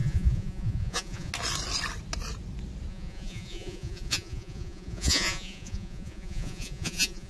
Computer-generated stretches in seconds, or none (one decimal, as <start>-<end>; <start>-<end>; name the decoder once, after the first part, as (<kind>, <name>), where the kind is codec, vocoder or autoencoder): 0.0-1.3 (vocoder, Vocos); 2.9-7.3